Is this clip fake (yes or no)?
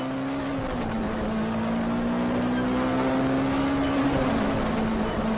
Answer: no